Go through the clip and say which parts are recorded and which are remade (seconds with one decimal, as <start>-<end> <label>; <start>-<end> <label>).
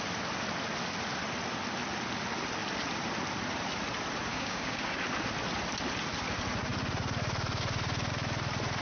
0.0-4.3 recorded; 4.3-5.0 remade; 5.0-8.8 recorded